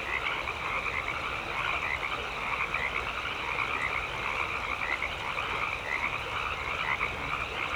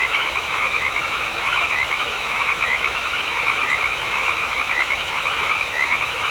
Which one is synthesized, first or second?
second